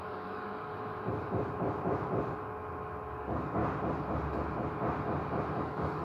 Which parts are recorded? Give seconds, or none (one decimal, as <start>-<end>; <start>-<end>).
0.7-3.2; 3.6-5.6